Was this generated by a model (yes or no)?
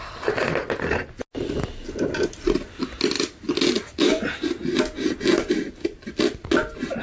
no